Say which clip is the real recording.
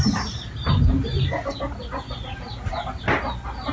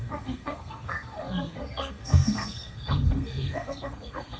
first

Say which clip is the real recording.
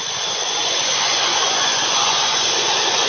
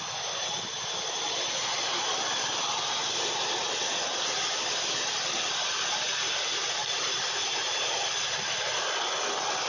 second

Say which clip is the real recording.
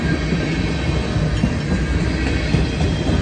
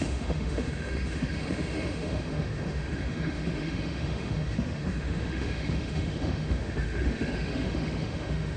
first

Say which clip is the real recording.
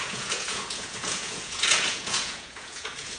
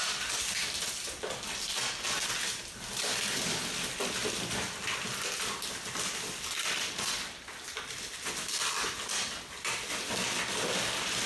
second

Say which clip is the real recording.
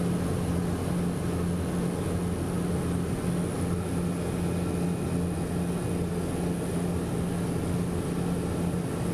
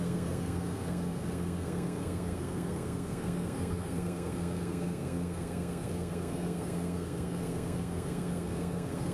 first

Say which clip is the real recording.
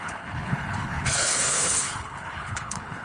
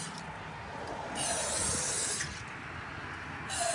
second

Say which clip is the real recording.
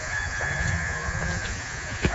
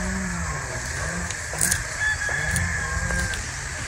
second